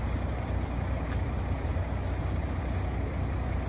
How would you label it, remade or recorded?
recorded